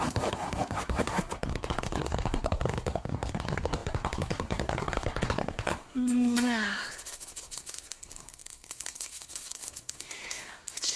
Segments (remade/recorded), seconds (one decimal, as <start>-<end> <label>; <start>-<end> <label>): 0.0-11.0 remade